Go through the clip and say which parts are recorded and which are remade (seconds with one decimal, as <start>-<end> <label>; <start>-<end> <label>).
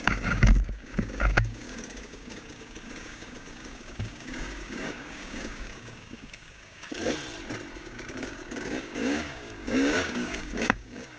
0.0-7.0 remade; 7.0-7.8 recorded; 7.8-11.2 remade